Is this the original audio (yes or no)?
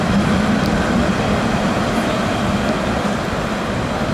yes